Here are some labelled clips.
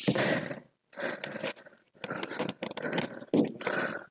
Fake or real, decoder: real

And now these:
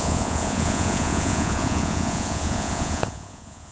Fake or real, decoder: fake, vocoder, Vocos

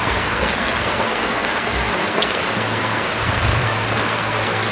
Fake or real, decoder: fake, codec, SNAC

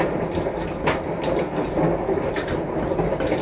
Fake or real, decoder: real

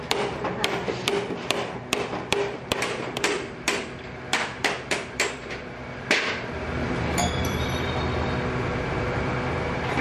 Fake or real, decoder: fake, vocoder, BigVGAN v2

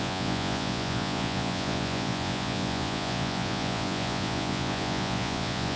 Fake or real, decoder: fake, vocoder, Vocos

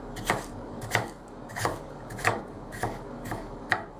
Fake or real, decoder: fake, codec, DAC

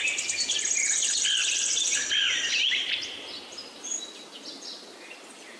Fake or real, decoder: real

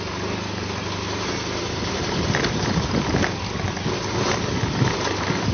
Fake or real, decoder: real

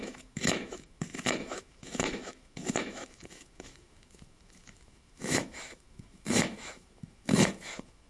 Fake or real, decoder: fake, autoencoder, DAC-VAE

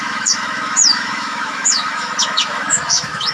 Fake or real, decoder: fake, autoencoder, DAC-VAE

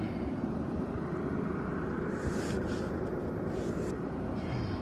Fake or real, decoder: real